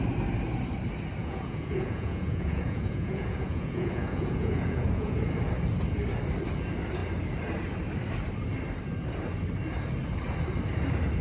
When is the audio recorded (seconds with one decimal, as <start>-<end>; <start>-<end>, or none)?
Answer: 0.0-1.2; 5.2-11.2